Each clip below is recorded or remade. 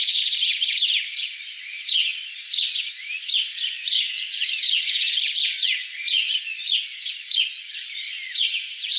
remade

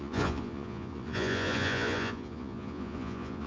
remade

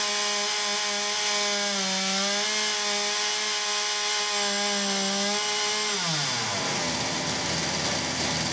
recorded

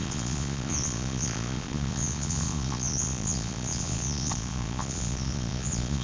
remade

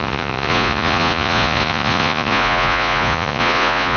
remade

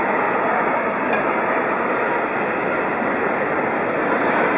recorded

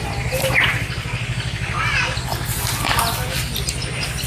recorded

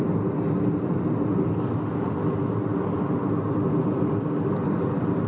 recorded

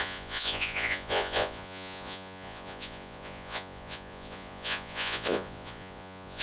remade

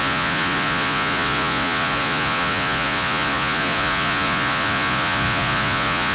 remade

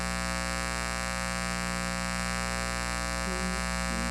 recorded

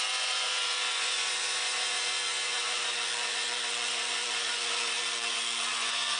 remade